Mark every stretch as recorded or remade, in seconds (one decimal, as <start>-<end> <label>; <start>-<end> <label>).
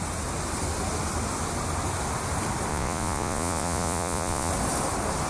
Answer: 0.0-2.7 recorded; 2.7-4.5 remade; 4.5-5.3 recorded